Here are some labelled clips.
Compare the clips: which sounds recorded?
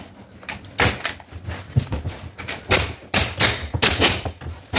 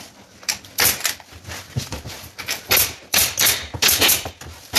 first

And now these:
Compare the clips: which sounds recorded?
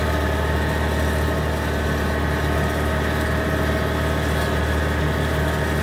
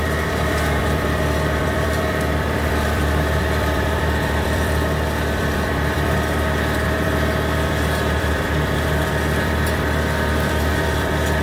first